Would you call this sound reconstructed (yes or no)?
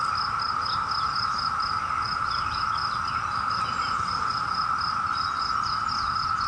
no